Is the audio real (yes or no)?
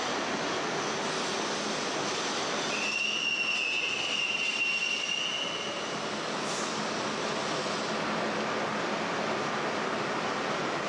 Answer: yes